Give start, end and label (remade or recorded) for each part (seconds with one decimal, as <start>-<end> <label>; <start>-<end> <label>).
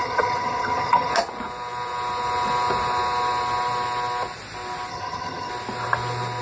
0.0-1.1 remade; 1.1-4.9 recorded; 4.9-5.5 remade; 5.5-6.4 recorded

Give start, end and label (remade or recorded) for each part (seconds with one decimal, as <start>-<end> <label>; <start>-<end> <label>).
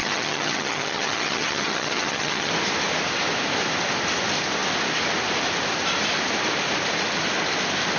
0.0-2.5 remade; 2.5-8.0 recorded